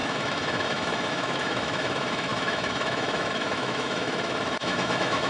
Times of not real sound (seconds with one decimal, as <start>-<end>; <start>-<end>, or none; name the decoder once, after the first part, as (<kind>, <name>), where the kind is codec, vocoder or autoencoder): 0.0-5.3 (autoencoder, DAC-VAE)